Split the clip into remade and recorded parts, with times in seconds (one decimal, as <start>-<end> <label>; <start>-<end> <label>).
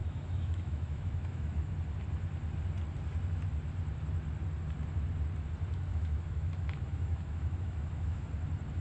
0.0-1.7 remade; 1.7-5.9 recorded; 5.9-8.3 remade; 8.3-8.8 recorded